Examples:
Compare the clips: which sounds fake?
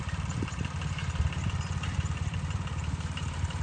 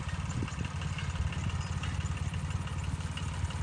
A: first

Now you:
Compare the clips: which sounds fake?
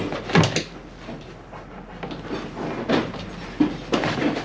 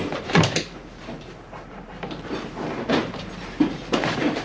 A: second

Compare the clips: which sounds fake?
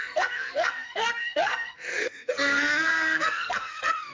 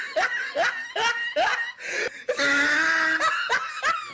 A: first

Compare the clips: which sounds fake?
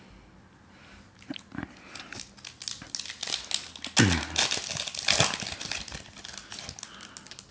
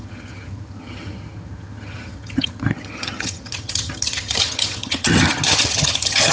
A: second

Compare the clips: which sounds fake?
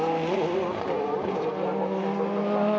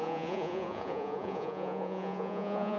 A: second